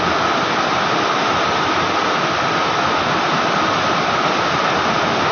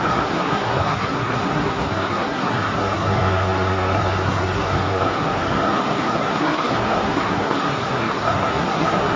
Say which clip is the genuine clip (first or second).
first